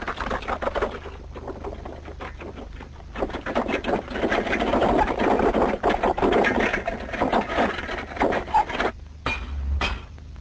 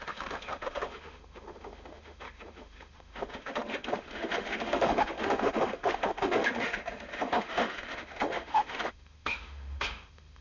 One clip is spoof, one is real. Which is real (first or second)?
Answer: first